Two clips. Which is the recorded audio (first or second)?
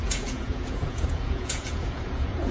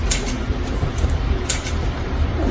second